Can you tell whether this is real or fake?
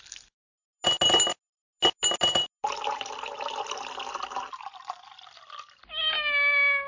real